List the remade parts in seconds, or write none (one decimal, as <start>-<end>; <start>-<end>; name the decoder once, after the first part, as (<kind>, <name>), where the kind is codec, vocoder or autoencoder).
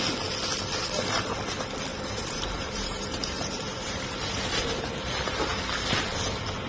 1.9-5.6 (vocoder, BigVGAN v2)